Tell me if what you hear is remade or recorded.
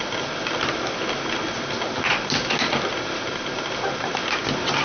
recorded